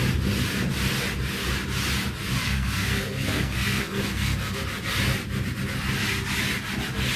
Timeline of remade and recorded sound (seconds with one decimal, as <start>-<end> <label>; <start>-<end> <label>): 0.0-2.4 recorded; 2.4-4.6 remade; 4.6-7.2 recorded